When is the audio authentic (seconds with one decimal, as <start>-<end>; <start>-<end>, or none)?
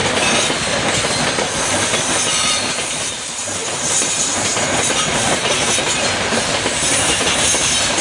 0.0-2.7